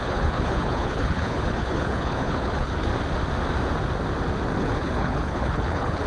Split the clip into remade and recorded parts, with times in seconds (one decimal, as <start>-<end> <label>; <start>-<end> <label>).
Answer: 0.0-2.9 remade; 2.9-4.6 recorded; 4.6-6.1 remade

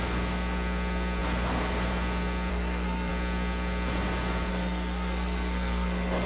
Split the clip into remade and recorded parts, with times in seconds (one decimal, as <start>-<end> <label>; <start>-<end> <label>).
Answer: 0.0-2.5 recorded; 2.5-3.1 remade; 3.1-4.5 recorded; 4.5-6.3 remade

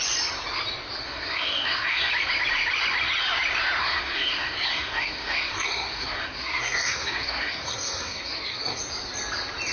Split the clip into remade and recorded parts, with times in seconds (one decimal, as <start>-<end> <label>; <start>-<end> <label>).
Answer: 0.0-1.0 recorded; 1.0-2.1 remade; 2.1-3.8 recorded; 3.8-8.8 remade; 8.8-9.7 recorded

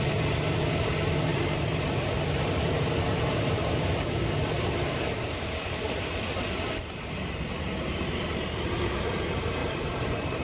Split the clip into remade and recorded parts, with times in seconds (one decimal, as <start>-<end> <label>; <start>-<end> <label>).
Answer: 0.0-1.3 recorded; 1.3-5.4 remade; 5.4-9.6 recorded; 9.6-10.4 remade

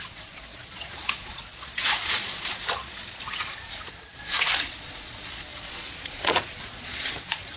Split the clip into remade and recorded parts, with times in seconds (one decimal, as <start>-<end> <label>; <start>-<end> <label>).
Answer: 0.0-7.6 remade

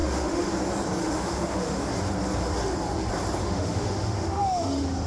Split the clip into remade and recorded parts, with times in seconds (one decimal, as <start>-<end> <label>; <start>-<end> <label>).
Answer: 0.0-0.5 remade; 0.5-1.0 recorded; 1.0-1.8 remade; 1.8-3.4 recorded; 3.4-5.1 remade

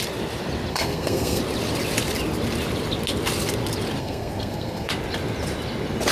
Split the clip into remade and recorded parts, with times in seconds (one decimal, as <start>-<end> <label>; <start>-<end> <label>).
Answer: 0.0-0.7 recorded; 0.7-1.4 remade; 1.4-4.0 recorded; 4.0-4.9 remade; 4.9-6.1 recorded

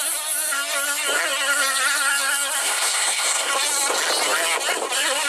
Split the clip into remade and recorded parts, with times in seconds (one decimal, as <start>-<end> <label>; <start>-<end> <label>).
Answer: 0.0-2.6 recorded; 2.6-3.5 remade; 3.5-5.3 recorded